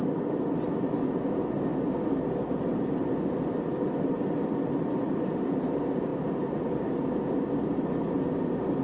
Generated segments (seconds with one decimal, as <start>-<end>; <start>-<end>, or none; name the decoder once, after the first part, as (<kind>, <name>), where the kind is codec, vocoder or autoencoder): none